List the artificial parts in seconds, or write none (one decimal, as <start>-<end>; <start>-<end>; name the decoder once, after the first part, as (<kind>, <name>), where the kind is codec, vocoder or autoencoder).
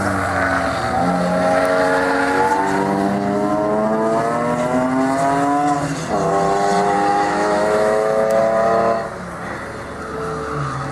7.1-8.4 (autoencoder, DAC-VAE)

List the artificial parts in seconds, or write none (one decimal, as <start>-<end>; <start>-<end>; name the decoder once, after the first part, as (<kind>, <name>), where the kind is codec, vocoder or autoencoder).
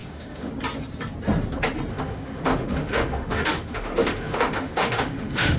0.0-0.5 (autoencoder, DAC-VAE); 1.9-5.6